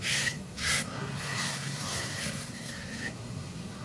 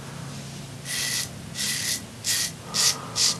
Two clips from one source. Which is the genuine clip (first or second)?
second